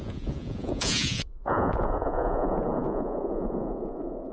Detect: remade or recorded remade